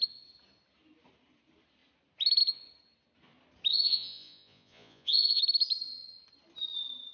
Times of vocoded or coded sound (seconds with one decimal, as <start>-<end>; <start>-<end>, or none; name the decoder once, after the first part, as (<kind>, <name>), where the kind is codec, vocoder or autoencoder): 3.7-5.4 (vocoder, Vocos)